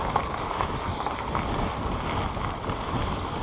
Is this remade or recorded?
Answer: recorded